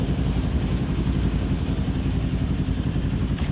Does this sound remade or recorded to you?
remade